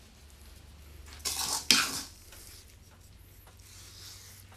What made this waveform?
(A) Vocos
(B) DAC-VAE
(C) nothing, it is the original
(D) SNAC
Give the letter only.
C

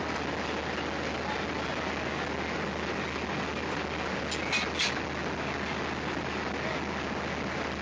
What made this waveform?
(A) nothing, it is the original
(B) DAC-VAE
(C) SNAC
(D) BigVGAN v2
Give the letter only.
A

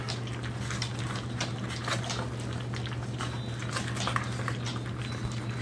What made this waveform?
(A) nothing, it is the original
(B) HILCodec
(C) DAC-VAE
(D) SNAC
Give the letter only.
A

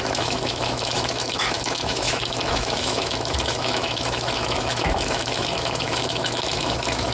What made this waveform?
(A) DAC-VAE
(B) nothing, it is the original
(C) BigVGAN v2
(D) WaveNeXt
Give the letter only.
A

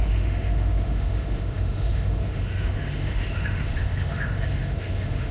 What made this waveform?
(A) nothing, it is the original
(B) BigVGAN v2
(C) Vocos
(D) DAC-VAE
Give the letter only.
D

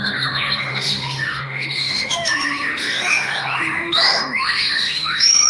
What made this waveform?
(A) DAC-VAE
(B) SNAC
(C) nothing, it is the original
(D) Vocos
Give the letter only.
A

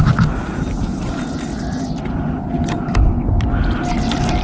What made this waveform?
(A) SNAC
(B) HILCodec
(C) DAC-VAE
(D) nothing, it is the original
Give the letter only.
D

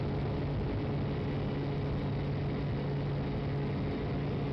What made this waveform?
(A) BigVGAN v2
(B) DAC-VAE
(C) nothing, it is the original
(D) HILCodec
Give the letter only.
C